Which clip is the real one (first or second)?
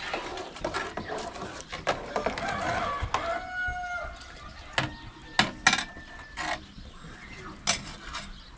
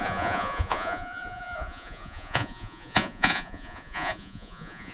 first